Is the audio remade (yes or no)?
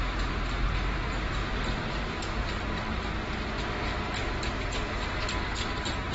no